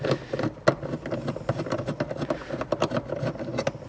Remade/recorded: recorded